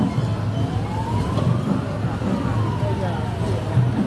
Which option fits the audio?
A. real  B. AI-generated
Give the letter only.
A